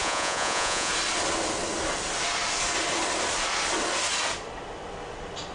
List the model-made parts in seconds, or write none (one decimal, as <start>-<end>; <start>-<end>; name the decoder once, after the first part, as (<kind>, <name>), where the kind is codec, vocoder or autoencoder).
0.0-0.9 (vocoder, Vocos)